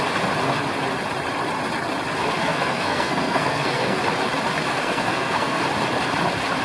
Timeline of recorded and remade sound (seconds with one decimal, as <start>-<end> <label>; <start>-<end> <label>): 0.0-2.4 recorded; 2.4-4.0 remade; 4.0-4.7 recorded; 4.7-5.6 remade; 5.6-6.6 recorded